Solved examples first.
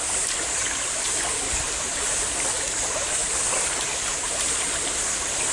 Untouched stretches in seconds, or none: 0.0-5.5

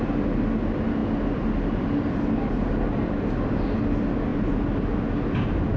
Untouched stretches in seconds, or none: 0.0-5.8

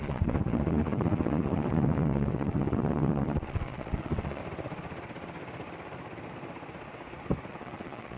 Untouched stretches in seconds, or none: 4.4-7.5

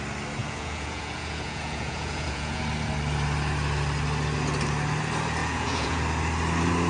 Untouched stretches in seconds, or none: 0.0-0.4; 2.6-5.4; 6.0-6.9